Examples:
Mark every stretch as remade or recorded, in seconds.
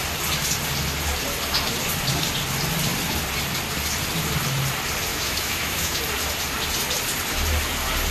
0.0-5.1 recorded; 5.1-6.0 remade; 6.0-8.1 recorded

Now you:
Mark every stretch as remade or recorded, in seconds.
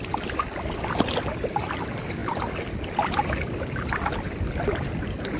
0.0-5.4 recorded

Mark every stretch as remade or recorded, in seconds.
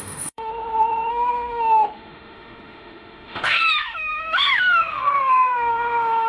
0.0-0.5 remade; 0.5-1.1 recorded; 1.1-6.3 remade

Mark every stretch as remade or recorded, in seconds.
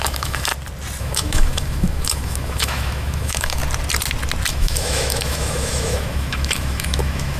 0.0-0.5 remade; 0.5-1.0 recorded; 1.0-3.6 remade; 3.6-4.5 recorded; 4.5-7.4 remade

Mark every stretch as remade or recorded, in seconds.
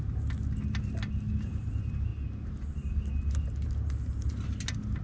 0.0-5.0 recorded